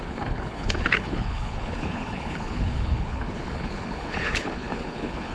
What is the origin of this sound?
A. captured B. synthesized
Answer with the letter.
B